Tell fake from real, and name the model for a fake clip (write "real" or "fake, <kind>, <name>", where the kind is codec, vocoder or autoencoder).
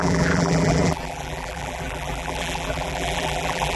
fake, vocoder, BigVGAN v2